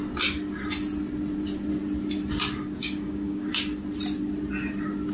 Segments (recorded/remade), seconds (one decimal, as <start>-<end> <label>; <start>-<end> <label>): 0.0-2.8 recorded; 2.8-3.5 remade; 3.5-5.1 recorded